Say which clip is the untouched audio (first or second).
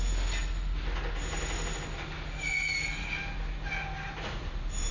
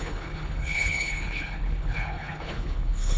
first